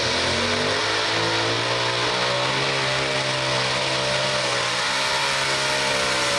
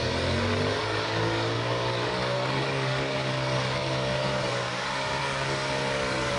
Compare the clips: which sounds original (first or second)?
first